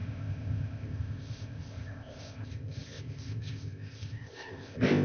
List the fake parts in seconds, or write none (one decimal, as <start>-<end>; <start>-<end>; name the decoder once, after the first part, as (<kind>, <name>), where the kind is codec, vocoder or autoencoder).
0.0-5.0 (codec, ZipCodec)